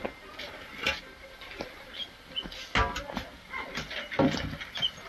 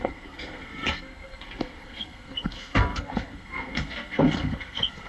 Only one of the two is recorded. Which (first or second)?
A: first